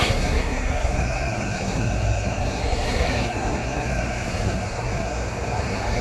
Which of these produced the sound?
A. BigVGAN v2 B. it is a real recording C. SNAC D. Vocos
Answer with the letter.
C